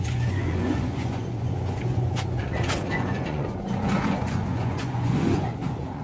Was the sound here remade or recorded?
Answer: remade